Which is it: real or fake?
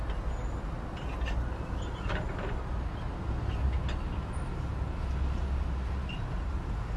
real